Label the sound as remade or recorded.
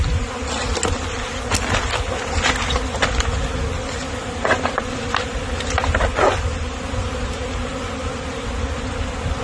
recorded